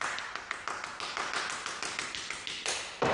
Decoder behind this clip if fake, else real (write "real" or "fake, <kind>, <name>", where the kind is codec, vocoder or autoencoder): real